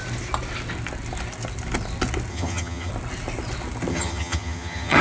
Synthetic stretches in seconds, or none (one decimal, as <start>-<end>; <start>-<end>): 2.3-2.9; 3.9-5.0